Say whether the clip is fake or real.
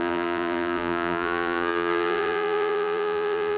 fake